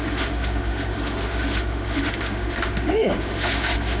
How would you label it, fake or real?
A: fake